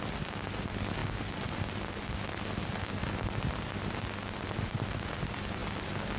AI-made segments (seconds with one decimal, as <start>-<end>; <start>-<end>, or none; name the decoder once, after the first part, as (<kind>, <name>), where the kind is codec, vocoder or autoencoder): none